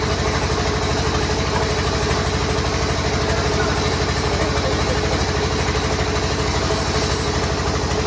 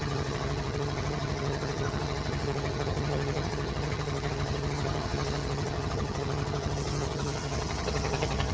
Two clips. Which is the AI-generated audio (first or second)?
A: second